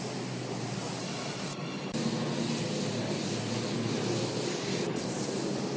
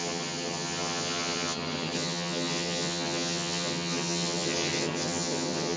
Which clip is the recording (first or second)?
first